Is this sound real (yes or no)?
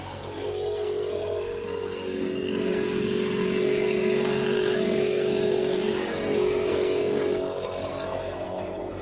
no